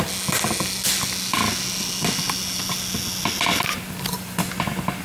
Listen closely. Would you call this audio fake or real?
real